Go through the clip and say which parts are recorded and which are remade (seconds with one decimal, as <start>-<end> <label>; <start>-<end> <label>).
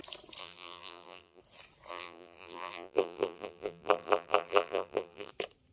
0.0-0.4 recorded; 0.4-1.4 remade; 1.4-1.9 recorded; 1.9-5.3 remade; 5.3-5.7 recorded